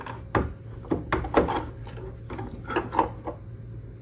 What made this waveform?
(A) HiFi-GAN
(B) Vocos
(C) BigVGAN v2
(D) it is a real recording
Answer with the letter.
D